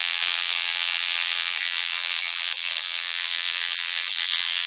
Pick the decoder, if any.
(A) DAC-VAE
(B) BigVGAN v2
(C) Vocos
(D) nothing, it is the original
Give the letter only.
B